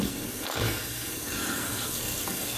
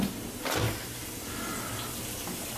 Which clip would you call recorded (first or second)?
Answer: second